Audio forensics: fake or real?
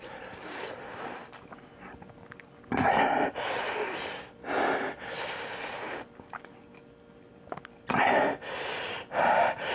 real